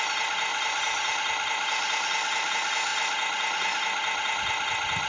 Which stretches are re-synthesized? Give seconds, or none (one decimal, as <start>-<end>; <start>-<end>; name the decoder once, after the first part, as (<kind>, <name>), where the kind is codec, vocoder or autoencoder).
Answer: 0.5-2.5 (vocoder, BigVGAN v2)